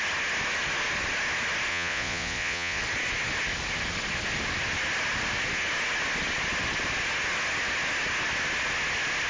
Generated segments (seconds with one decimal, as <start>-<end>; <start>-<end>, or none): 1.7-2.8